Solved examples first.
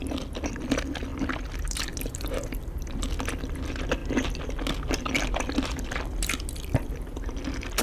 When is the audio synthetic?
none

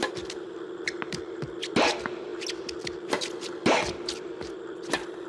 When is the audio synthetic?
none

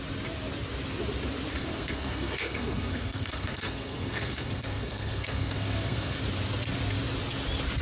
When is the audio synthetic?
1.5-6.2 (codec, SNAC)

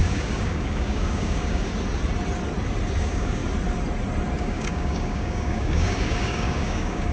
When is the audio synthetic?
0.0-1.7 (codec, DAC); 3.0-3.4; 4.4-7.1

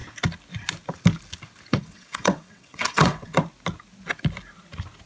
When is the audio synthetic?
1.7-3.4 (vocoder, WaveNeXt)

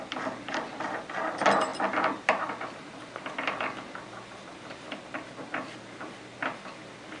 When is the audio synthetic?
none

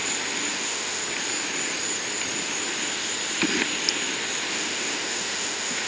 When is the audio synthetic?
0.5-1.0 (autoencoder, DAC-VAE); 4.5-5.9